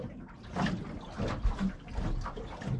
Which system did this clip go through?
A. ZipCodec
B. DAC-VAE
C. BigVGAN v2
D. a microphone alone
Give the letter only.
D